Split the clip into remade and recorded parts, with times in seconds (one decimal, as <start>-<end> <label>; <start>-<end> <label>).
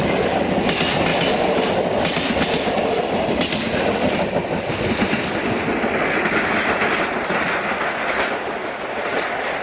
0.0-1.1 recorded; 1.1-1.7 remade; 1.7-9.6 recorded